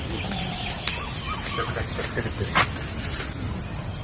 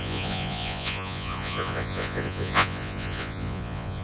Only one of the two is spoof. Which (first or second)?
second